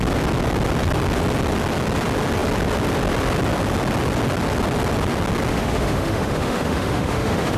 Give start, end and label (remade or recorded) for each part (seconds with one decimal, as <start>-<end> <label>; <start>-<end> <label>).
0.0-5.5 recorded; 5.5-7.6 remade